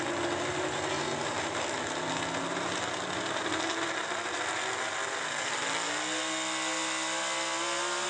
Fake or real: real